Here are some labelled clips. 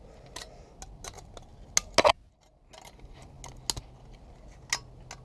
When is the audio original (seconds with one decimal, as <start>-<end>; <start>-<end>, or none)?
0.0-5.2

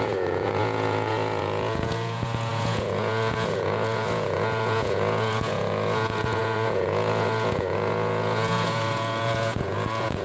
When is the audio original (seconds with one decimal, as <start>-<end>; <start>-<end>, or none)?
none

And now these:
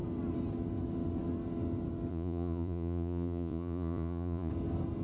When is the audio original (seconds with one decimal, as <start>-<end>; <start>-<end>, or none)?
0.0-2.1; 4.5-5.0

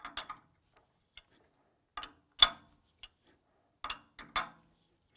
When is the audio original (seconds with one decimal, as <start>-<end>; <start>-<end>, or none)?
0.0-5.2

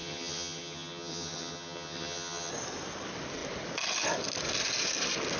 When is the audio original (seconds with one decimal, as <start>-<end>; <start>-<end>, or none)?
2.5-5.4